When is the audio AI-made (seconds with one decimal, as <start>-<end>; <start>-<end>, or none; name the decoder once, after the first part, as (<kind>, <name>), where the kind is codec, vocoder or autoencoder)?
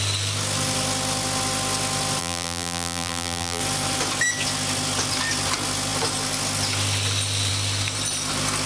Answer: 2.2-3.6 (vocoder, BigVGAN v2)